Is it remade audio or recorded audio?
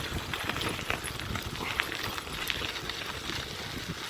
recorded